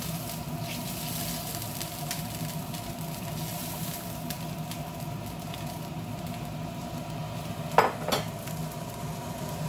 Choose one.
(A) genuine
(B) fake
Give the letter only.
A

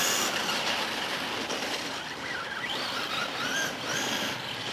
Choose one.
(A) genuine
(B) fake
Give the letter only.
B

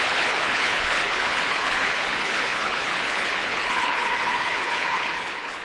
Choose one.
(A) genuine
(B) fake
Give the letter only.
B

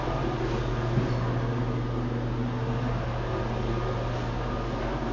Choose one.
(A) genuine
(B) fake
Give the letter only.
A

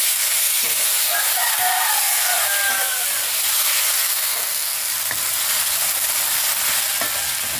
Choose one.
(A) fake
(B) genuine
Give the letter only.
B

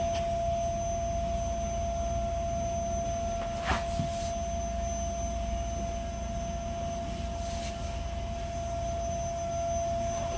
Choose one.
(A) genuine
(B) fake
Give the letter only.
A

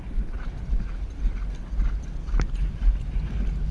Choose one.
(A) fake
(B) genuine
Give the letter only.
B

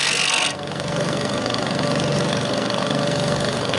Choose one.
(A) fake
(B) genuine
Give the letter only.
A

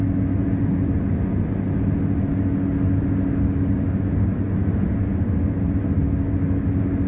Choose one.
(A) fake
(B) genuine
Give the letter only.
B